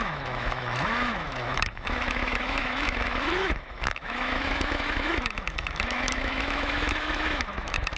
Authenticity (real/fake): fake